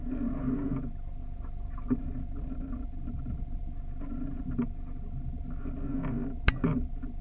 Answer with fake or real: real